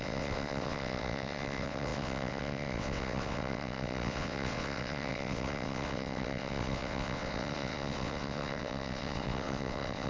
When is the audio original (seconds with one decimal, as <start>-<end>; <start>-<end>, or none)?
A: none